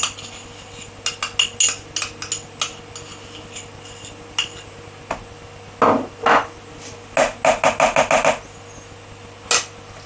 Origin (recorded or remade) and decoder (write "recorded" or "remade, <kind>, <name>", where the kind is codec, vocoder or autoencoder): recorded